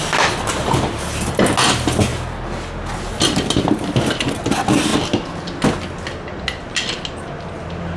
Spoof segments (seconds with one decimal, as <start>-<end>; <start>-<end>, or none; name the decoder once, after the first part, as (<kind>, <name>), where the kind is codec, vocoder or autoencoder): none

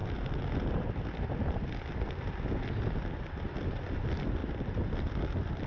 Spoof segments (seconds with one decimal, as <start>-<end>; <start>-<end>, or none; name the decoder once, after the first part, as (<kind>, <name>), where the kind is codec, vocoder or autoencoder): none

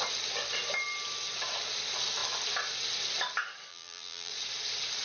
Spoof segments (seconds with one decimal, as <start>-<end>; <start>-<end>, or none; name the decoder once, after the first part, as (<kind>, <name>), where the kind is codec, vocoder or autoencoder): 3.7-4.3 (vocoder, BigVGAN v2)

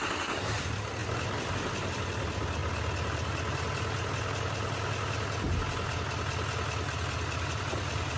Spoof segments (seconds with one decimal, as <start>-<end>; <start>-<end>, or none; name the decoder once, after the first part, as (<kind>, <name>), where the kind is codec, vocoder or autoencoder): 0.0-2.6 (vocoder, BigVGAN v2); 7.5-8.2